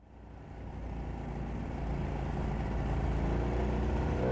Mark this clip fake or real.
real